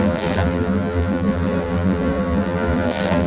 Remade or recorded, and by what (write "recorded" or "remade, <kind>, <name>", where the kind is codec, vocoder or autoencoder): remade, vocoder, BigVGAN v2